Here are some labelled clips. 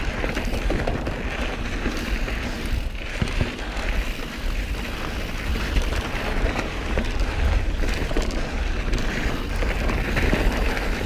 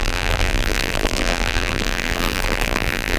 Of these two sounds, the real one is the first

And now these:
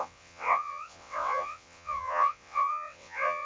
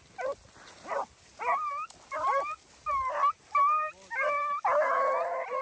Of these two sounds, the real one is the second